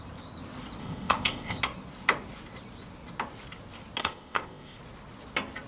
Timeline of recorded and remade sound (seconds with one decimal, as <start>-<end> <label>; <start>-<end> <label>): 0.0-0.8 recorded; 0.8-1.6 remade; 1.6-4.0 recorded; 4.0-4.8 remade; 4.8-5.7 recorded